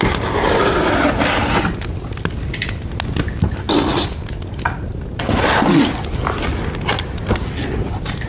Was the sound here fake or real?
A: real